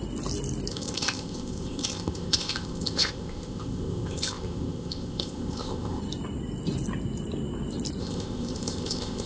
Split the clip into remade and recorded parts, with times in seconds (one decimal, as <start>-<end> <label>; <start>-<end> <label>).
0.0-0.7 recorded; 0.7-6.0 remade; 6.0-8.0 recorded; 8.0-9.3 remade